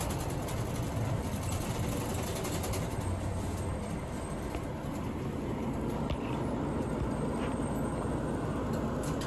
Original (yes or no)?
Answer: yes